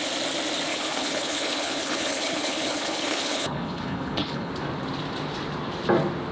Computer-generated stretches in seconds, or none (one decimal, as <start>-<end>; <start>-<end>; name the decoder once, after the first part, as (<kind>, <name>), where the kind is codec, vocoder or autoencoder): 0.7-4.5 (codec, HILCodec)